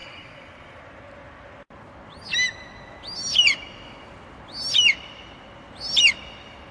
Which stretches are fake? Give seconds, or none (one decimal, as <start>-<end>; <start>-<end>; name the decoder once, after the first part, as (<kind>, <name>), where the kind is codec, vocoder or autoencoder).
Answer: 0.0-0.8 (vocoder, Vocos)